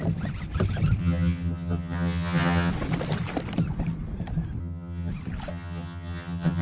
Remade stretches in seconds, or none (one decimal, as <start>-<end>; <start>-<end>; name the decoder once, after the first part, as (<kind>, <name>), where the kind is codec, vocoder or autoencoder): 1.0-2.7 (vocoder, HiFi-GAN); 4.6-5.1; 5.5-6.6

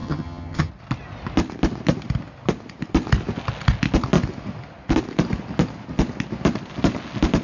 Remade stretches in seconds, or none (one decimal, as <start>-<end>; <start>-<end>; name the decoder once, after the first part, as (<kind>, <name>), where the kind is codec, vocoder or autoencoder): 0.0-0.7 (vocoder, HiFi-GAN)

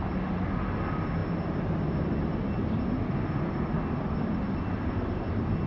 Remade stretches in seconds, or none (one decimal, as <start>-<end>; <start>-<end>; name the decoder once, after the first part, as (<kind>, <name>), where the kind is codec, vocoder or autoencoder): none

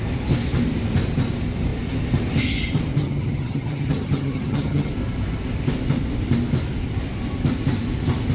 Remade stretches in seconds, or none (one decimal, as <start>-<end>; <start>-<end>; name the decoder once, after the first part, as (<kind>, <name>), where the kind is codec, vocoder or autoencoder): 3.0-4.9 (vocoder, HiFi-GAN)

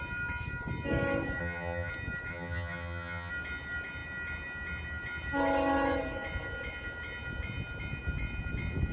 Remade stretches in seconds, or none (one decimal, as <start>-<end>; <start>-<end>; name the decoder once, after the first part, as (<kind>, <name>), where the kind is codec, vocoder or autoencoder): 1.4-1.9 (vocoder, HiFi-GAN); 2.3-3.3

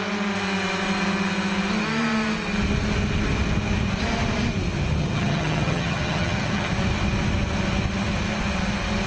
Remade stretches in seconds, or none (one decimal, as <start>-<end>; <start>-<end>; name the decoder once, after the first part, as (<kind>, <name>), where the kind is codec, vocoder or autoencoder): 5.0-6.7 (vocoder, HiFi-GAN)

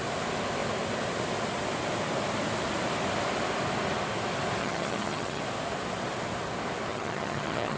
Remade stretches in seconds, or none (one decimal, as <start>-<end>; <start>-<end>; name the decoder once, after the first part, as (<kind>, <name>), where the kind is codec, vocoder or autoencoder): 4.6-5.4 (vocoder, HiFi-GAN); 6.9-7.8